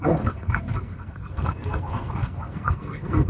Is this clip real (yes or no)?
no